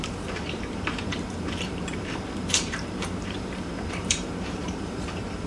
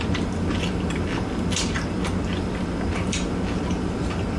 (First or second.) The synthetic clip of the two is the first